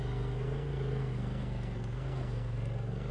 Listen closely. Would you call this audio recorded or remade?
remade